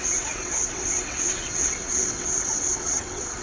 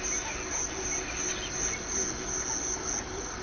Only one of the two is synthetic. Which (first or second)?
first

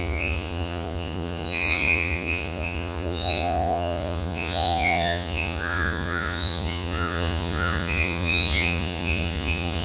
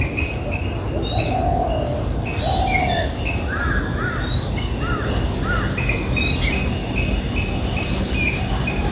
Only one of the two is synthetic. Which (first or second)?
first